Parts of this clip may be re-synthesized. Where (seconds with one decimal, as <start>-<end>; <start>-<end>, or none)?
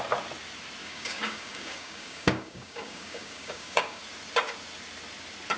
0.8-4.0